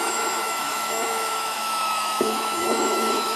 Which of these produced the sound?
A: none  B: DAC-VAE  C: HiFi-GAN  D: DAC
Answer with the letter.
B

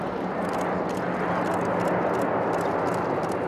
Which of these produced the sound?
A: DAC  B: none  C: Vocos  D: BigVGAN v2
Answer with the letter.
B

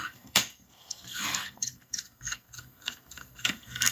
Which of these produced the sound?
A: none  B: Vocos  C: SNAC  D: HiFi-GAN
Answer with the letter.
C